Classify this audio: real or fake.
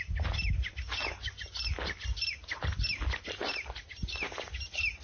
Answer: real